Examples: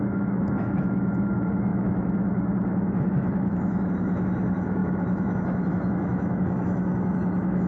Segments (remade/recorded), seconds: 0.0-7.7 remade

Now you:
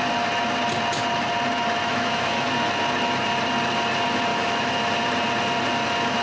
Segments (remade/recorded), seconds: 0.0-1.8 recorded; 1.8-2.5 remade; 2.5-4.3 recorded; 4.3-4.8 remade; 4.8-6.2 recorded